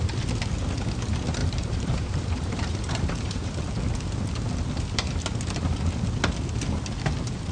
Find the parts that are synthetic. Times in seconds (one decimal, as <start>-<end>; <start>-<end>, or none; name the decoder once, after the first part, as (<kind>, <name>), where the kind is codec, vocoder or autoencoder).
1.4-3.6 (vocoder, BigVGAN v2)